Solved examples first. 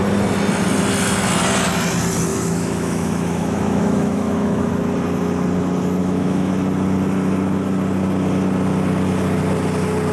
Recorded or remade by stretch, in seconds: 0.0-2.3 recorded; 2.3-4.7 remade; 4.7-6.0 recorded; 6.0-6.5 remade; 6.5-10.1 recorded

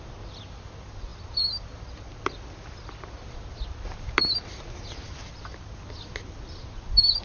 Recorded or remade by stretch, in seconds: 0.0-7.2 recorded

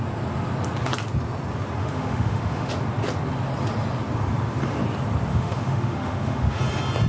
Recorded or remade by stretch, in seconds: 0.0-1.8 recorded; 1.8-2.7 remade; 2.7-5.3 recorded; 5.3-6.6 remade; 6.6-7.1 recorded

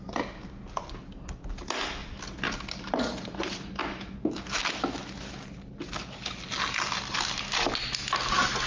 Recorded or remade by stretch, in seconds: 0.0-3.8 recorded; 3.8-5.4 remade; 5.4-8.7 recorded

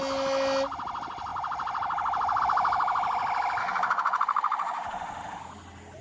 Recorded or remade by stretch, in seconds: 0.0-3.6 recorded; 3.6-5.4 remade; 5.4-6.0 recorded